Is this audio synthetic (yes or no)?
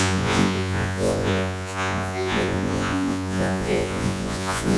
yes